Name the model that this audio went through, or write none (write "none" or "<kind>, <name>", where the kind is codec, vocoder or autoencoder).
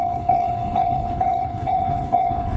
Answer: codec, HILCodec